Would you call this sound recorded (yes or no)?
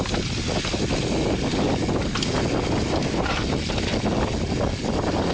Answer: yes